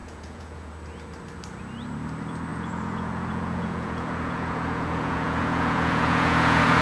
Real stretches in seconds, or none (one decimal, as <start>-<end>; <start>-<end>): 0.7-2.5